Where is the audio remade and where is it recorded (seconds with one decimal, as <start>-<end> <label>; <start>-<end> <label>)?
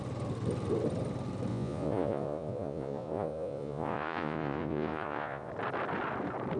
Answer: 0.0-1.5 recorded; 1.5-5.5 remade; 5.5-6.6 recorded